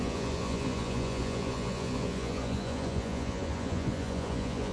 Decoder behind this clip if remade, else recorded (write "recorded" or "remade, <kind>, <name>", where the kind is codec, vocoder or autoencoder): remade, vocoder, Vocos